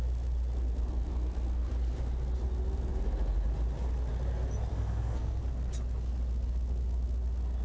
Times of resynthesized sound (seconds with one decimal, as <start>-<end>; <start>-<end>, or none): 4.7-5.4